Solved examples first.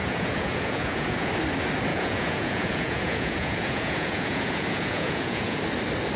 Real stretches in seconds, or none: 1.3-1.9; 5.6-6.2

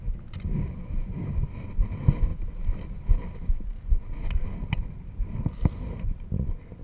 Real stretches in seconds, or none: 0.0-6.8

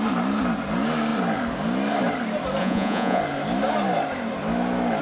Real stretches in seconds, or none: 0.0-2.6; 3.2-5.0

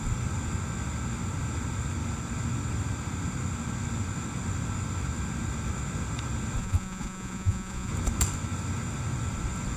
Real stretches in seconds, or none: 0.0-6.6; 7.9-9.8

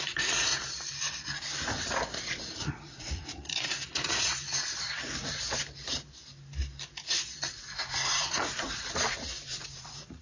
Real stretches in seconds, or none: 0.5-1.8; 4.3-7.5

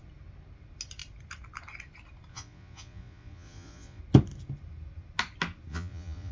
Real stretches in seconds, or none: 0.0-2.3; 4.0-5.7

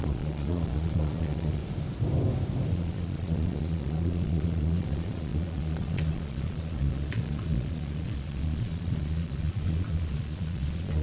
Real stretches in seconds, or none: 1.6-2.7

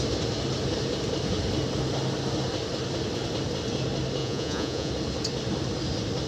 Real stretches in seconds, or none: 0.0-4.2; 4.9-6.3